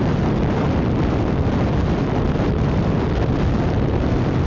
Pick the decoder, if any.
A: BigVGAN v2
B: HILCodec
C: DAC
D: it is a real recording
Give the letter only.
D